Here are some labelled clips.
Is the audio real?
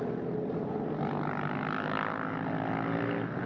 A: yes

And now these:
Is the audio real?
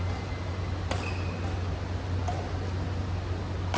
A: yes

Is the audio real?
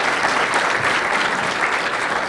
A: yes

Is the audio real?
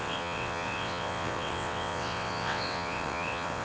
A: no